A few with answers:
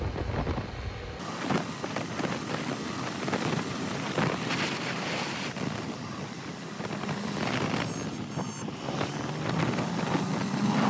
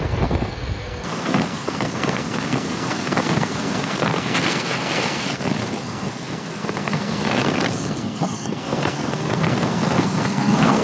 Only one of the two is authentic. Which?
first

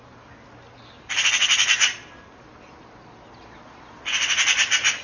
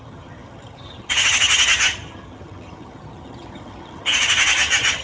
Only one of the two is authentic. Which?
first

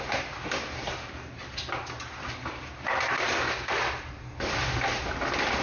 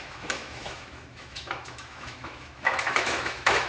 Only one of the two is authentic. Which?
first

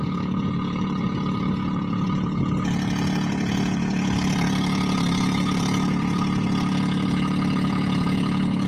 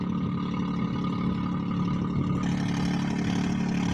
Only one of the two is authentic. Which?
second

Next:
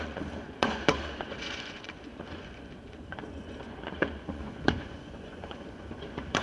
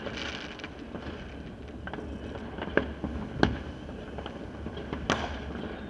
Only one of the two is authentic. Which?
second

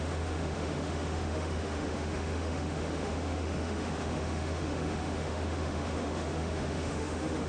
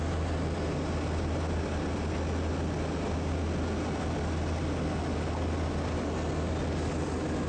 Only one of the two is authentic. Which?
second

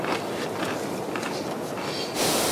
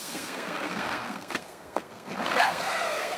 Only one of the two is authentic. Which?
first